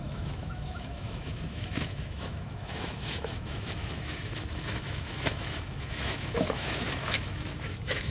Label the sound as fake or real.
fake